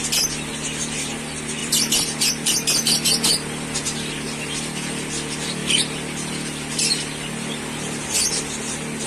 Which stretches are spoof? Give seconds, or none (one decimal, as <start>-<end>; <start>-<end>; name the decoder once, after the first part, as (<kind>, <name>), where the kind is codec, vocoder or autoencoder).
1.6-2.3 (vocoder, BigVGAN v2)